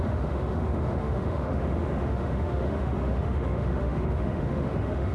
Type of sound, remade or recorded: remade